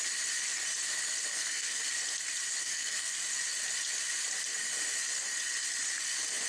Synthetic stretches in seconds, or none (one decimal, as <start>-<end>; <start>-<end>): 1.3-1.8; 2.6-3.1